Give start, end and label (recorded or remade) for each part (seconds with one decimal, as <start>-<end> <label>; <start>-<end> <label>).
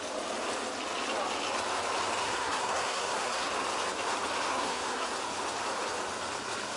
0.0-2.2 recorded; 2.2-3.5 remade; 3.5-4.5 recorded; 4.5-5.2 remade; 5.2-6.8 recorded